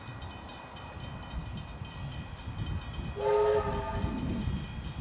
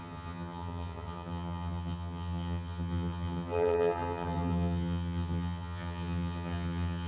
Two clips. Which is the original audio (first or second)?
first